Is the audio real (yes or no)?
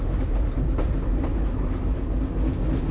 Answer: yes